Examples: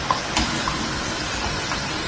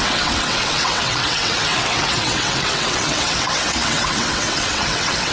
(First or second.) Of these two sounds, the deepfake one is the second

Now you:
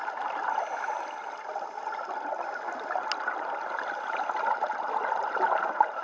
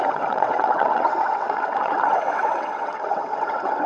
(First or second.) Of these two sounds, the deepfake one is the second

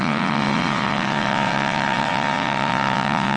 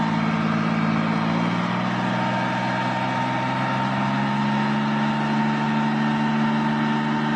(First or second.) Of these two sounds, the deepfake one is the first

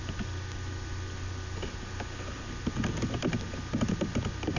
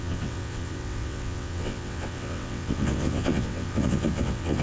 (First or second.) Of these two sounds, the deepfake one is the second